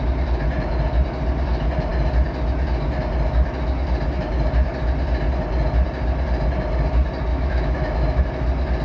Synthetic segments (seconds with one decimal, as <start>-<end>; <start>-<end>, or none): 7.3-8.2